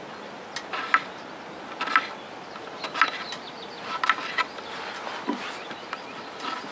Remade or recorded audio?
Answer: recorded